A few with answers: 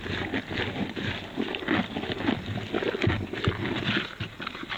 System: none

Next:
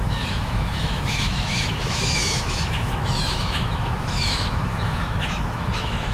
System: autoencoder, DAC-VAE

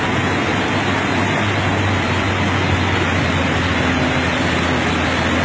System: none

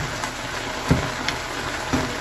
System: none